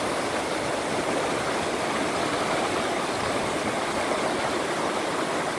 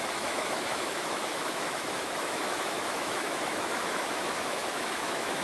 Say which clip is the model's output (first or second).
second